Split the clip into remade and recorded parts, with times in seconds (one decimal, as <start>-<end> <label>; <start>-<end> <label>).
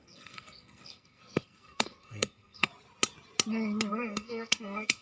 0.0-2.7 remade; 2.7-3.9 recorded; 3.9-5.0 remade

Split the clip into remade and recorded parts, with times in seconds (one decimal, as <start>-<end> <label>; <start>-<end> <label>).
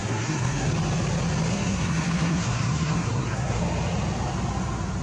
0.0-0.7 remade; 0.7-1.5 recorded; 1.5-3.6 remade; 3.6-5.0 recorded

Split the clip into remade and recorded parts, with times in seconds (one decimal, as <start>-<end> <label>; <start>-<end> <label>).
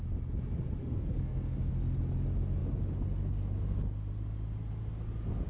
0.0-0.8 recorded; 0.8-1.7 remade; 1.7-5.5 recorded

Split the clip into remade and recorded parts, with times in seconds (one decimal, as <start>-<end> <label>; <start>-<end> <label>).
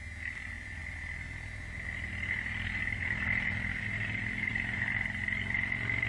0.0-6.1 recorded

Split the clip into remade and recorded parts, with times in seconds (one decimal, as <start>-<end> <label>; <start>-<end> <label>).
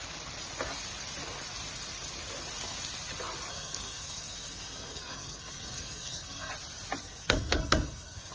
0.0-3.5 recorded; 3.5-6.5 remade; 6.5-7.0 recorded; 7.0-8.3 remade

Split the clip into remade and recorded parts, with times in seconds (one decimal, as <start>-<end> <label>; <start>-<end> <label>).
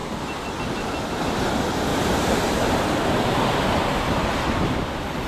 0.0-5.3 recorded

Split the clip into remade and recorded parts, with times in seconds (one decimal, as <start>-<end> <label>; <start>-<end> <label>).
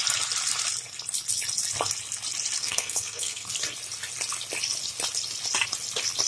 0.0-2.6 recorded; 2.6-3.5 remade; 3.5-6.3 recorded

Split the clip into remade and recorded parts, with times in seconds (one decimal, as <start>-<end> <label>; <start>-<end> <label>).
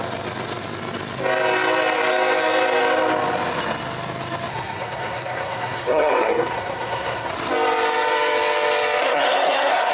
0.0-4.5 recorded; 4.5-7.3 remade; 7.3-9.0 recorded; 9.0-9.9 remade